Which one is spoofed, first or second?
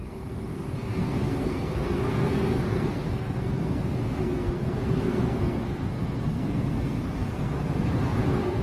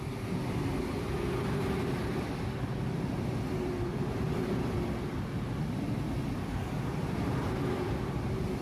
first